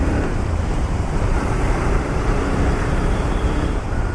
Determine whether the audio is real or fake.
fake